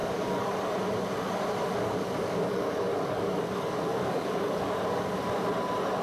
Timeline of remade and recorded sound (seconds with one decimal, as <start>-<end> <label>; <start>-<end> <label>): 0.0-0.5 remade; 0.5-1.6 recorded; 1.6-5.2 remade; 5.2-6.0 recorded